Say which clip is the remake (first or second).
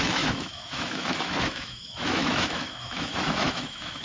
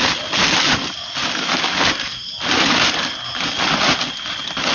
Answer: first